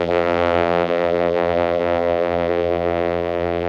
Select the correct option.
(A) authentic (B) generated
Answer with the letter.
B